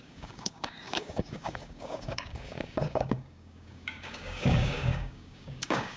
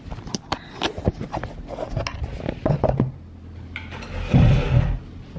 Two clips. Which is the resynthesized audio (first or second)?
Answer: first